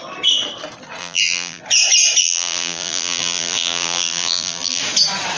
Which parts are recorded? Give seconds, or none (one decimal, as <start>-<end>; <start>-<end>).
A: 0.0-1.0; 1.6-2.2; 4.8-5.4